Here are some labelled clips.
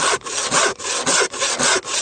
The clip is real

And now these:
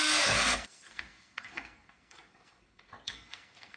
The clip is fake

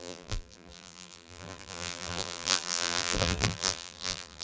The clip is fake